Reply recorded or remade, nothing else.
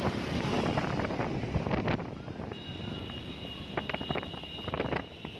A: recorded